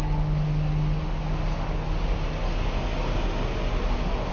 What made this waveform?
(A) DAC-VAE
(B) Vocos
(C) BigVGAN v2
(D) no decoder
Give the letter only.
D